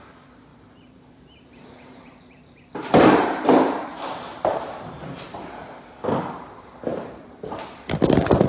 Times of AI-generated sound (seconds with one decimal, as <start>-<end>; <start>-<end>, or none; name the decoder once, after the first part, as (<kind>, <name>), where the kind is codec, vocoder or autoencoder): 0.5-5.4 (vocoder, BigVGAN v2); 6.9-7.6